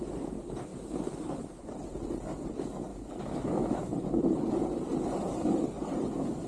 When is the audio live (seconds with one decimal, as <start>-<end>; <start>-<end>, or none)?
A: 0.0-2.9; 4.2-6.5